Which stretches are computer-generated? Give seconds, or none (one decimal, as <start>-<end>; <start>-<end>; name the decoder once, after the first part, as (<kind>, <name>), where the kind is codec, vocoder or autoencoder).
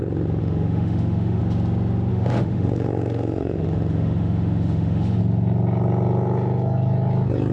0.4-1.4 (autoencoder, DAC-VAE); 2.1-5.2